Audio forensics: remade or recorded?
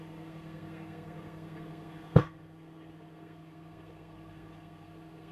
remade